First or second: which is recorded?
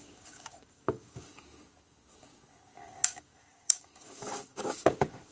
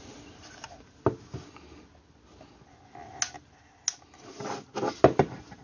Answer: second